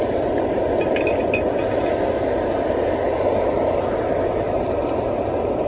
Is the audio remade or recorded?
recorded